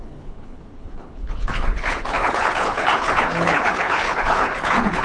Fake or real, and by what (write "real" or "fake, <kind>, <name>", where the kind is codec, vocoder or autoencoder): fake, codec, HILCodec